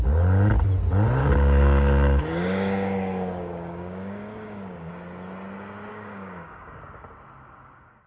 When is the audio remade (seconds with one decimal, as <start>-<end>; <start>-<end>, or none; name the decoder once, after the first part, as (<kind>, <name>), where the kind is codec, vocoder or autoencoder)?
1.2-4.9 (codec, DAC); 5.9-6.8